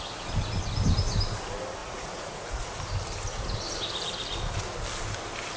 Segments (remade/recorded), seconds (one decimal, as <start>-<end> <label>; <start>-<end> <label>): 0.0-1.8 recorded; 1.8-2.6 remade; 2.6-5.6 recorded